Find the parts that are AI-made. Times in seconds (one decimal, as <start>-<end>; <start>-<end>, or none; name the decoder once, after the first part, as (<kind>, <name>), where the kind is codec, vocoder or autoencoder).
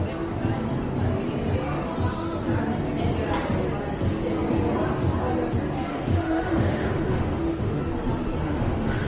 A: 5.9-7.8 (autoencoder, DAC-VAE); 8.4-9.1